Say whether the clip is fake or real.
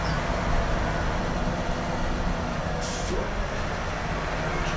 real